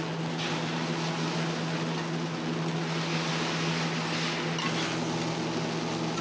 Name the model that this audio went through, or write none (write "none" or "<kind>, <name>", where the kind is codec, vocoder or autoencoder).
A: none